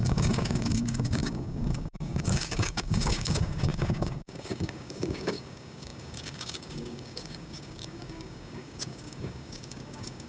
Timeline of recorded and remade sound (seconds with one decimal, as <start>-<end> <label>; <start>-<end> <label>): 0.0-10.3 remade